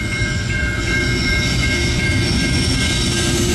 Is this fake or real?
fake